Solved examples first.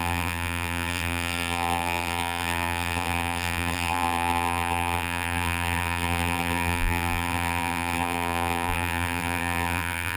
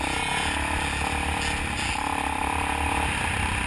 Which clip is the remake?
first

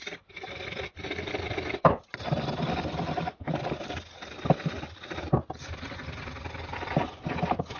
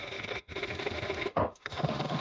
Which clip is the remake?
second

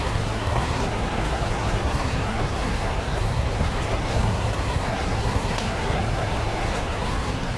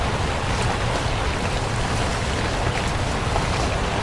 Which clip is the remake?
first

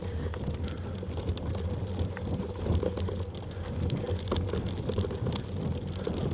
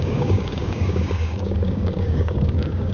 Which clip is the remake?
second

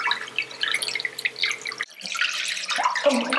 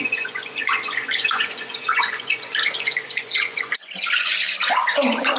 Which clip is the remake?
second